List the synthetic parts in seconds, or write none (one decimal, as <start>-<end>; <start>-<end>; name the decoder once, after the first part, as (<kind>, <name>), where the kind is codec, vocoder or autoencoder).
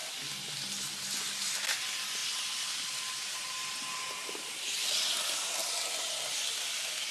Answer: none